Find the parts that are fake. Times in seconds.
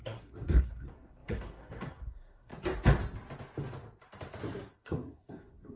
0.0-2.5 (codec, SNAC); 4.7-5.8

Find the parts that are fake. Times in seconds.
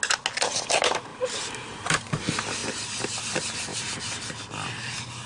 1.1-2.0 (vocoder, BigVGAN v2); 2.6-3.2; 3.7-4.4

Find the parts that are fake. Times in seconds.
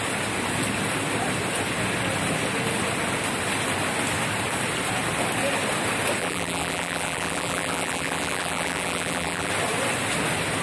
6.2-9.5 (vocoder, BigVGAN v2)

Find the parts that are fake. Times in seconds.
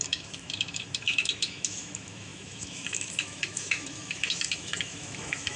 0.0-5.6 (autoencoder, DAC-VAE)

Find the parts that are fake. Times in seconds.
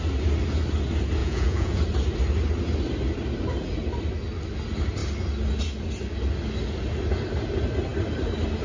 1.2-1.8 (vocoder, Vocos)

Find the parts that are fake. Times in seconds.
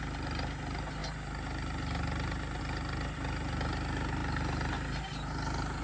none